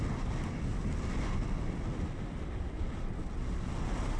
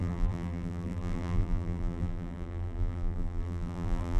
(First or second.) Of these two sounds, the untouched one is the first